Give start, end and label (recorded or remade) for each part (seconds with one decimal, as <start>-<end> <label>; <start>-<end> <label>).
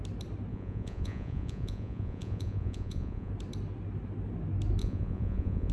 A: 0.0-0.5 recorded; 0.5-3.3 remade; 3.3-4.8 recorded; 4.8-5.7 remade